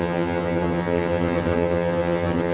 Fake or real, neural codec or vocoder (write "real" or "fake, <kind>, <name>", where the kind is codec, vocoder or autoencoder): fake, vocoder, HiFi-GAN